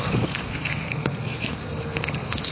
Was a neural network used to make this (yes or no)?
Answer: yes